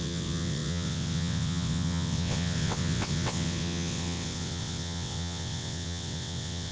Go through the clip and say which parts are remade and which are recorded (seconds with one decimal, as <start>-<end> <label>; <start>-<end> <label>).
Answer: 0.0-6.7 remade

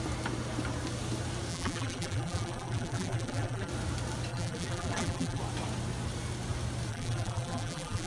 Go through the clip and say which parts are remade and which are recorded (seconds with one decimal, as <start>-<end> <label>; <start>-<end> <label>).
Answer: 0.0-1.5 recorded; 1.5-3.7 remade; 3.7-4.3 recorded; 4.3-5.4 remade; 5.4-6.9 recorded; 6.9-8.1 remade

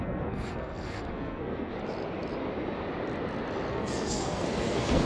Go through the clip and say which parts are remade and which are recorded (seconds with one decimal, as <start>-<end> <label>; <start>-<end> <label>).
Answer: 0.0-1.7 remade; 1.7-3.7 recorded; 3.7-5.1 remade

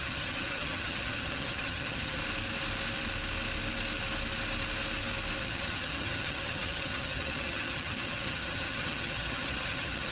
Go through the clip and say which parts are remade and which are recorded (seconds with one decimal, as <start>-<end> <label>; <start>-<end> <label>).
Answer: 0.0-2.2 remade; 2.2-5.4 recorded; 5.4-10.1 remade

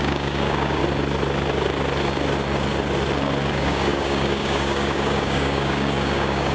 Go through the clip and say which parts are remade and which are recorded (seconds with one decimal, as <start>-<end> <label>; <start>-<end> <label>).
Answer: 0.0-0.8 remade; 0.8-3.5 recorded; 3.5-6.5 remade

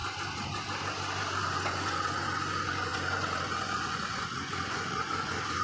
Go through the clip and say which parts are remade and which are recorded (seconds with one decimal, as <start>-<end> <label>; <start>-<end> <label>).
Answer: 0.0-1.4 recorded; 1.4-5.6 remade